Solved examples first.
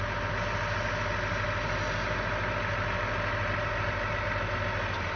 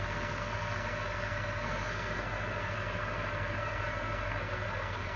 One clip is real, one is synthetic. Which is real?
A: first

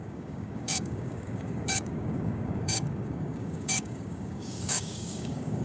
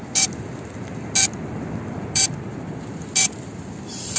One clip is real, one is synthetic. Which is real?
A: second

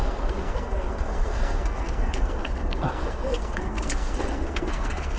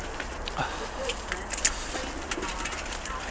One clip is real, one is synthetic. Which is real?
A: second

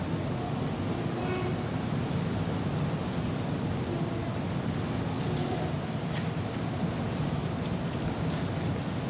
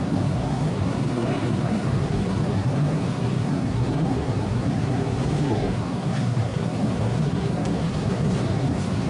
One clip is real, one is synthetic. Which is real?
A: first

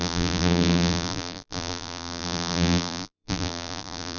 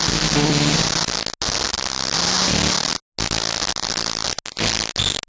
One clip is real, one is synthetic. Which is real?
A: second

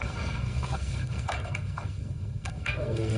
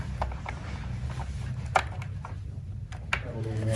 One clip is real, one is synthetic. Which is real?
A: second